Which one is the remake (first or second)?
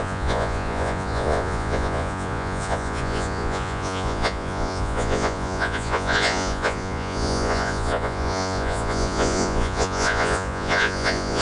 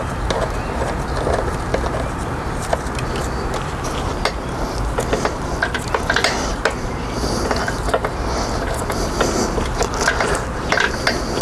first